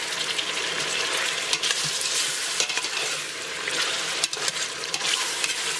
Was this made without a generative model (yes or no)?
yes